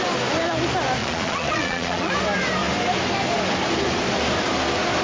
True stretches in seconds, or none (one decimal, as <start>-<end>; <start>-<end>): 0.0-1.0; 2.1-5.0